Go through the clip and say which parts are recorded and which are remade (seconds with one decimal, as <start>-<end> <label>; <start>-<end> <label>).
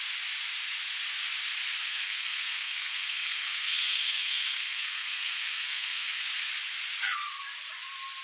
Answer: 0.0-1.8 recorded; 1.8-6.2 remade; 6.2-8.2 recorded